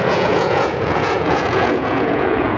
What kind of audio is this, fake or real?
fake